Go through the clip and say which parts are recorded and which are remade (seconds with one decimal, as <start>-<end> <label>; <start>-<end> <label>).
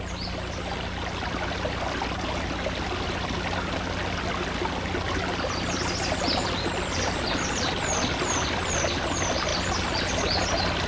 0.0-10.9 recorded